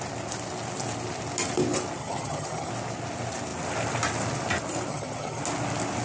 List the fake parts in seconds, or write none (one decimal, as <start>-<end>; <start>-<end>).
2.0-2.7; 4.9-5.4